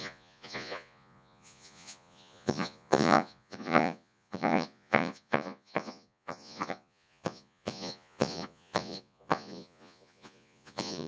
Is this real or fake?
fake